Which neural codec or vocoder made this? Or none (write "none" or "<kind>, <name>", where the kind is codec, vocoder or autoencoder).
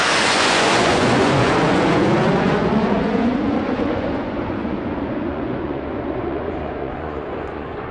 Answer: vocoder, Vocos